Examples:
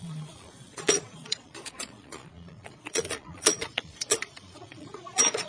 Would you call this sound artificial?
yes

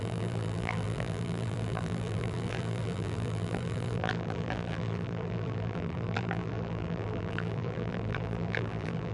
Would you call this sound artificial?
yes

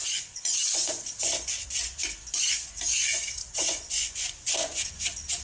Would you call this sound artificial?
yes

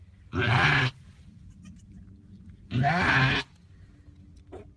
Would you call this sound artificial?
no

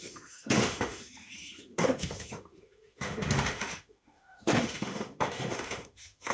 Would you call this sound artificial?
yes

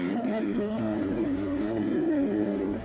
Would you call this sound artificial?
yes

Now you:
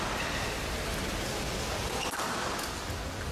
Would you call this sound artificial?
no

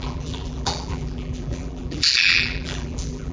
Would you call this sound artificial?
yes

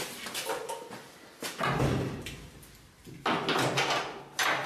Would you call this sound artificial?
no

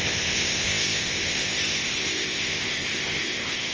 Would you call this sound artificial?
yes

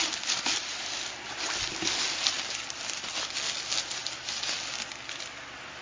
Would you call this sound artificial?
no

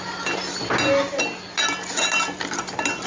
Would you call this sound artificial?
no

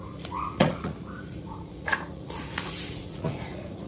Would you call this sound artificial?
yes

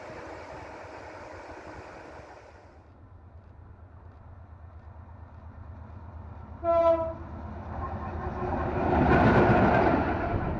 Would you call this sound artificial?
no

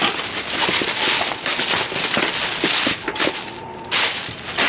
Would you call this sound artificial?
no